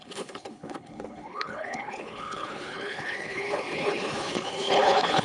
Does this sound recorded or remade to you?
remade